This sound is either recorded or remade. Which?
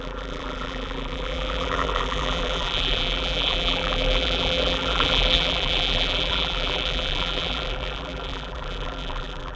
remade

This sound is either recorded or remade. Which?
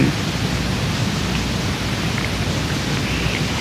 recorded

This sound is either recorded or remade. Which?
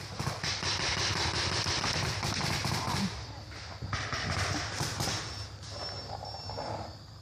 recorded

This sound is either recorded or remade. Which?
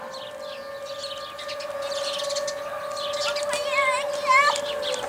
recorded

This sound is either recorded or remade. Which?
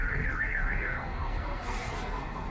remade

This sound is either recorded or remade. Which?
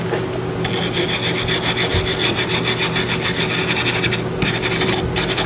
recorded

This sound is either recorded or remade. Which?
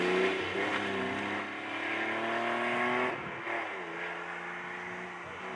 recorded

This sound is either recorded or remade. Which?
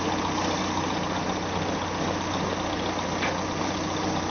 recorded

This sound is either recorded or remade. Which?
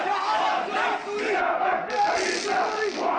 recorded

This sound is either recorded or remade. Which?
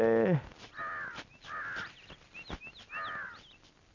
recorded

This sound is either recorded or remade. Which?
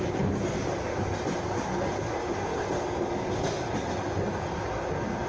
recorded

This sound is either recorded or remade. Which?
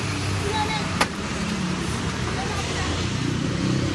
remade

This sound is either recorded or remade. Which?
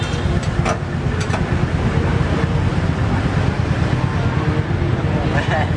recorded